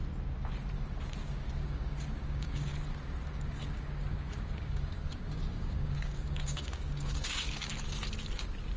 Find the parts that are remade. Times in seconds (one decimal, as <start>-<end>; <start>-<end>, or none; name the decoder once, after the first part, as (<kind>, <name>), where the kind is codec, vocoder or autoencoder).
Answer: 1.2-2.7 (codec, DAC); 3.3-7.7